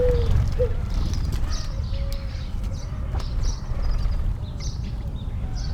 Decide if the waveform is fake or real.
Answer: real